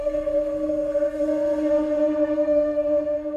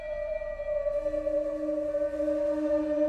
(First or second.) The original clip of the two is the second